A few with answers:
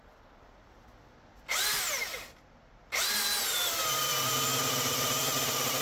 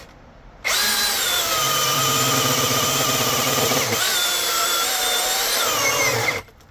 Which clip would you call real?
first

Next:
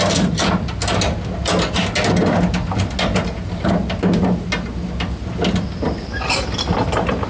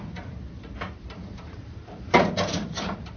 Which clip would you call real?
first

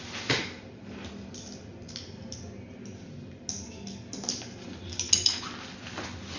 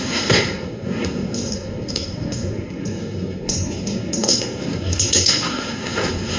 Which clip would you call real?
first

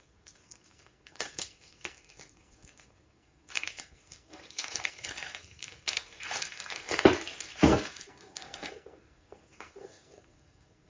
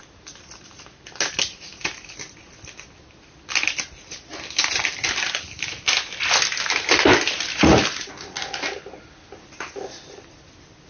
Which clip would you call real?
second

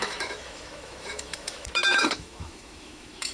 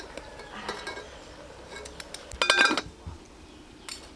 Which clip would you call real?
second